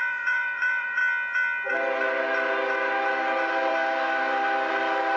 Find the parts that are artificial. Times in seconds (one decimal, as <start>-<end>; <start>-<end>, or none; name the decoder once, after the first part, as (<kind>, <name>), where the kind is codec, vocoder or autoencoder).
0.0-1.0 (vocoder, BigVGAN v2); 1.7-3.7; 4.7-5.2